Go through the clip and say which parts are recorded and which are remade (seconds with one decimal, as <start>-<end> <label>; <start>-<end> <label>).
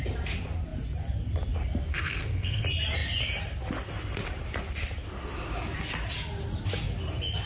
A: 0.0-1.9 recorded; 1.9-2.6 remade; 2.6-7.5 recorded